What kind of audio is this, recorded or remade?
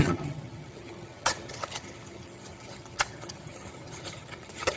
remade